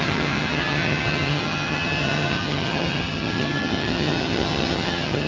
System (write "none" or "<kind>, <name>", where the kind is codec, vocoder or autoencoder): vocoder, HiFi-GAN